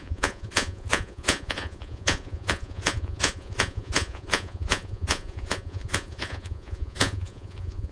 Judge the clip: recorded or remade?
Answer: remade